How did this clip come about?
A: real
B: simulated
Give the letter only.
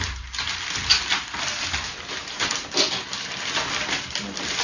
A